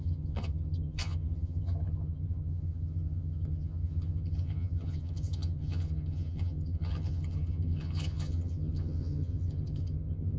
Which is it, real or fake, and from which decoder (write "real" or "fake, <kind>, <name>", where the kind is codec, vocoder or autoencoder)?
fake, vocoder, HiFi-GAN